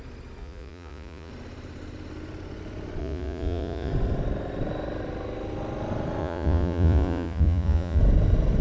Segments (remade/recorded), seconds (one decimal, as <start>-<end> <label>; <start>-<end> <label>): 0.0-0.4 recorded; 0.4-1.3 remade; 1.3-3.0 recorded; 3.0-3.9 remade; 3.9-6.2 recorded; 6.2-8.0 remade; 8.0-8.6 recorded